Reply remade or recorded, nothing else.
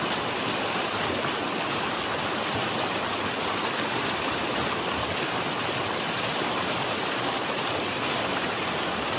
recorded